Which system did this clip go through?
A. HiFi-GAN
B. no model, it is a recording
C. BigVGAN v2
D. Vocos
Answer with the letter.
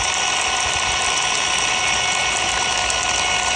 B